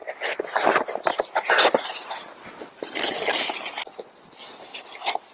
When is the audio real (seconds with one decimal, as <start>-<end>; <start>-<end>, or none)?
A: 2.6-4.7